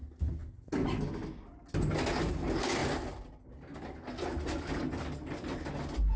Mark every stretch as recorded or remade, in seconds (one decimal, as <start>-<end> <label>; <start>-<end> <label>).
0.0-6.2 recorded